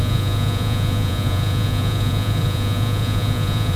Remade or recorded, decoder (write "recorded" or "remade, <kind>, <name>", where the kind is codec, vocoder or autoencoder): remade, vocoder, Vocos